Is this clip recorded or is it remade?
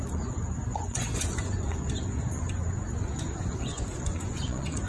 remade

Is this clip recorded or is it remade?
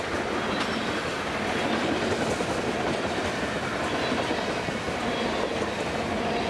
recorded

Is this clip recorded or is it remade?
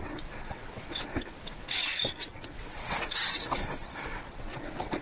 remade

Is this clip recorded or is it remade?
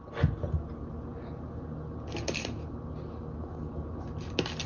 recorded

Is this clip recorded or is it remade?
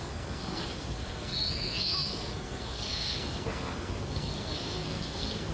remade